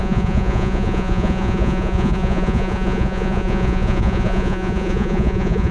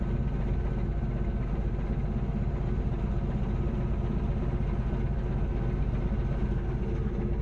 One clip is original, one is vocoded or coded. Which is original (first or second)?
second